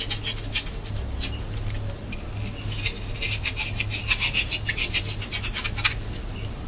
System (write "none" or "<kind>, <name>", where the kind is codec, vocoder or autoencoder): none